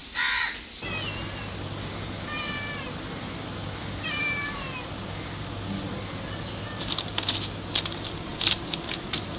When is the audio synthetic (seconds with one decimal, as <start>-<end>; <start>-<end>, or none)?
none